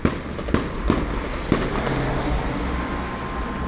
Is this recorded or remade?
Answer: recorded